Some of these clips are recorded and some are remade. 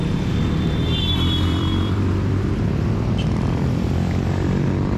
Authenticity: remade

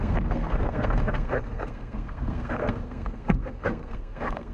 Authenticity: remade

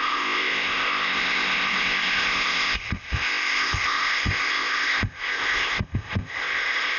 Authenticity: remade